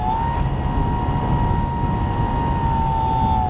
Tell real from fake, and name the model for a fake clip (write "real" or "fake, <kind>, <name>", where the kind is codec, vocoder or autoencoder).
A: real